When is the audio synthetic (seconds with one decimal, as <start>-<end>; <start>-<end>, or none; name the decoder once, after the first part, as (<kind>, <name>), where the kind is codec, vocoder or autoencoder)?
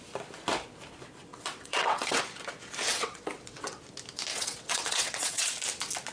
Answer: 1.3-2.2 (vocoder, WaveNeXt); 2.9-3.8; 4.3-5.5